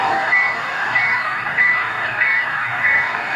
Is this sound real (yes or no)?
no